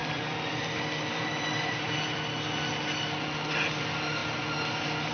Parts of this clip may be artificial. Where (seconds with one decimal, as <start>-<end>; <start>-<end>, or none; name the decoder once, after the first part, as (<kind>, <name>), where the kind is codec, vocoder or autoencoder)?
0.0-1.9 (vocoder, BigVGAN v2)